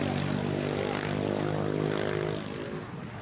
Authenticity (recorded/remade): recorded